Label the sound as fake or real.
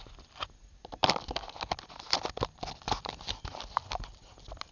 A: real